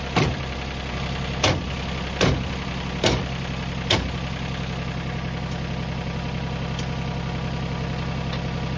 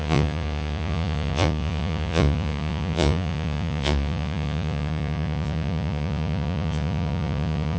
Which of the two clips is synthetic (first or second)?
second